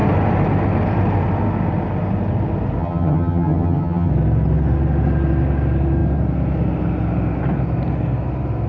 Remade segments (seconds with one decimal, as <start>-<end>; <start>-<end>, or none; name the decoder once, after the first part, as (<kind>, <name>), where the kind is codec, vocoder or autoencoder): 2.8-4.1 (vocoder, HiFi-GAN)